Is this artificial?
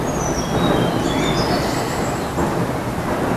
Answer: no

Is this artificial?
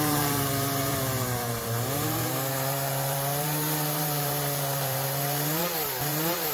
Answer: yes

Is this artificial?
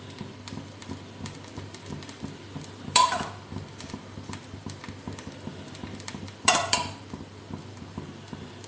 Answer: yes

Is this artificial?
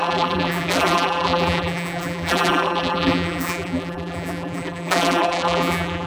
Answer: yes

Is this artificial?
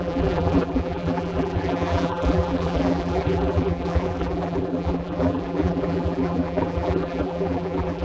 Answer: yes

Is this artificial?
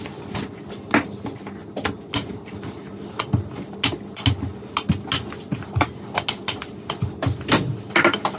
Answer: no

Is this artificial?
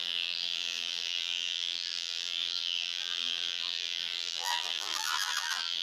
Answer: yes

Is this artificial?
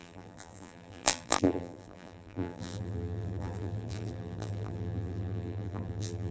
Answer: yes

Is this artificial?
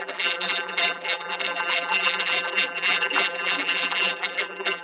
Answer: yes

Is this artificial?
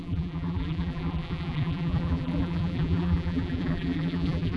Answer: yes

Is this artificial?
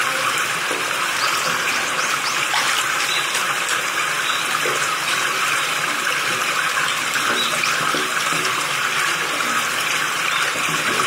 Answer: yes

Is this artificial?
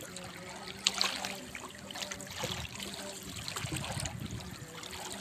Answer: no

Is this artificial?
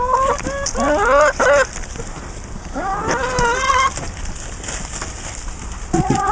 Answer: no